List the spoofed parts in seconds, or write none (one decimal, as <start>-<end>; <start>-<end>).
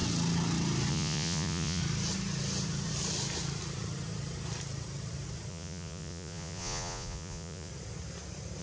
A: 0.9-1.8; 5.5-7.7